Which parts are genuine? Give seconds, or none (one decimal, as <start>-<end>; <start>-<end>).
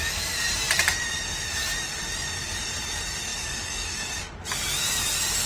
0.0-3.3; 4.1-5.5